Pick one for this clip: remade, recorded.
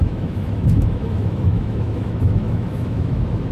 remade